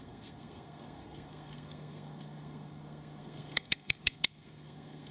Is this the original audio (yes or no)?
no